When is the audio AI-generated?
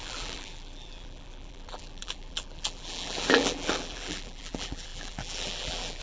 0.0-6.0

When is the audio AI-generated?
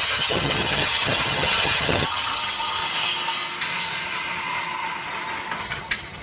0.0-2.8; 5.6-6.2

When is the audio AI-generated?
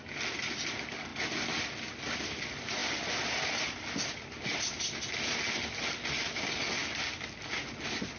none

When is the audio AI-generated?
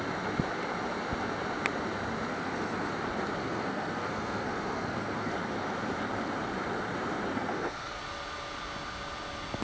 2.3-2.9; 3.4-5.3; 7.3-8.0